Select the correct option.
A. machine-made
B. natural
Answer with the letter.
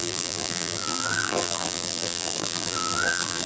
A